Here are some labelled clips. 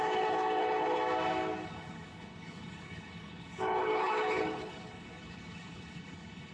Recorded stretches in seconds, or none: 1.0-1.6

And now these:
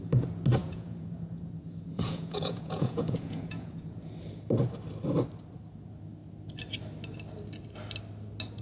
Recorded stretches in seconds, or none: 0.0-0.6; 4.0-8.6

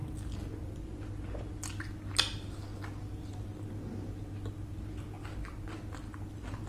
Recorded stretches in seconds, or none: 0.0-6.7

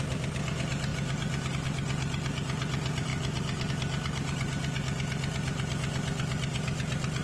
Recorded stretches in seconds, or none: 0.0-7.2

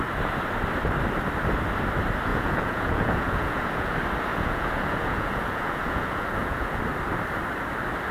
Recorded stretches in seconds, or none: 0.0-2.3; 3.9-4.3; 6.8-8.1

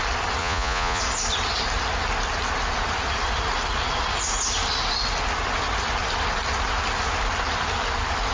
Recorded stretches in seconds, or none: 0.0-0.4; 1.0-8.3

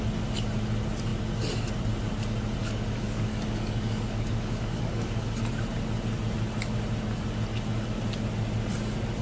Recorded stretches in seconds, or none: 0.0-2.6; 5.6-9.2